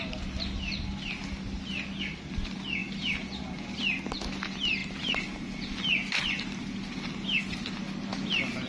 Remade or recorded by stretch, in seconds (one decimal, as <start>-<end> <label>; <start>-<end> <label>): 0.0-8.7 recorded